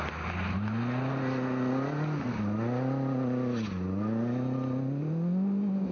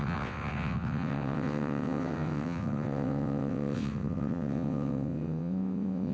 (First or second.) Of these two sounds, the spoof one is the second